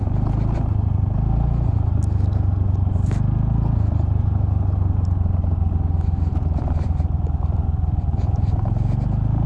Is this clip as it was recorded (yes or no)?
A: yes